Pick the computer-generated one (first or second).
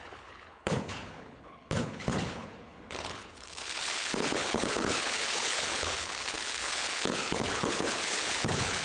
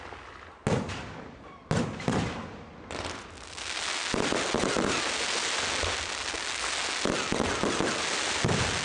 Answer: first